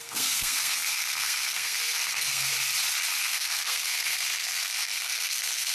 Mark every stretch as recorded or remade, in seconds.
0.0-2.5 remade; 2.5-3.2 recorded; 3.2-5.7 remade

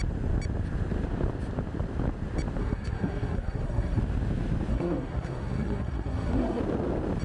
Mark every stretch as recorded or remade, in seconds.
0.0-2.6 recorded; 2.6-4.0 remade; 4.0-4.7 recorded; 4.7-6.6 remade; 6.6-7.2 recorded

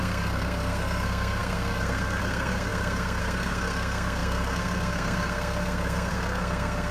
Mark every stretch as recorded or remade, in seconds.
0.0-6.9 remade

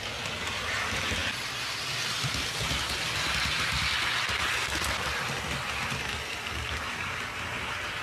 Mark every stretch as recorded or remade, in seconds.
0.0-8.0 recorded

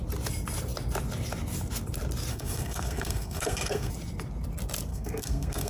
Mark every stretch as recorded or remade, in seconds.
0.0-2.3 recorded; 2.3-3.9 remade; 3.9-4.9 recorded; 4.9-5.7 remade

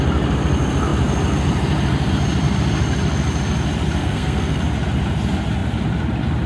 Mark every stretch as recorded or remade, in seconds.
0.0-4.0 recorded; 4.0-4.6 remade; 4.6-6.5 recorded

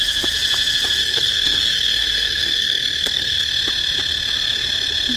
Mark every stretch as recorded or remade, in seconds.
0.0-1.0 recorded; 1.0-3.5 remade; 3.5-5.2 recorded